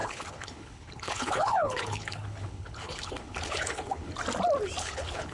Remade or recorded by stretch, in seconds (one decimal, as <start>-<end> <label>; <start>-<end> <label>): 0.0-4.1 remade; 4.1-4.8 recorded; 4.8-5.3 remade